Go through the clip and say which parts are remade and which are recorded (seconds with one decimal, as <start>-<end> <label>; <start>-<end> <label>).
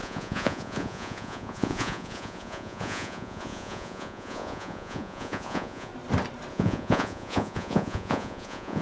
0.0-5.9 remade; 5.9-6.5 recorded; 6.5-8.8 remade